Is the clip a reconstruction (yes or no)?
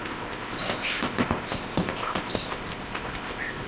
yes